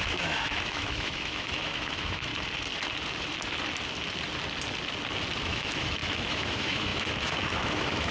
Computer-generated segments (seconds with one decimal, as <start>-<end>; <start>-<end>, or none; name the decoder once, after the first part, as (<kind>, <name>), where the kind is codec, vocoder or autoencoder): 0.0-2.3 (autoencoder, DAC-VAE); 5.4-8.1